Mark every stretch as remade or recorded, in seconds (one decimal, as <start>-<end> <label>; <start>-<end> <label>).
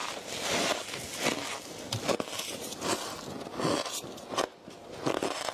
0.0-5.5 recorded